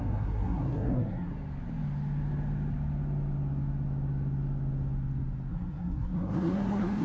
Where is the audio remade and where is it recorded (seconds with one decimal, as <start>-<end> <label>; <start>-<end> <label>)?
0.0-1.3 remade; 1.3-5.5 recorded; 5.5-7.0 remade